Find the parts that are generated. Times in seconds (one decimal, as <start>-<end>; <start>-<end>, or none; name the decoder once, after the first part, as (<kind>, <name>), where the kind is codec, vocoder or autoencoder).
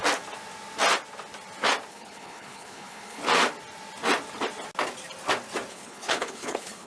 1.9-3.2 (codec, HILCodec); 5.7-6.9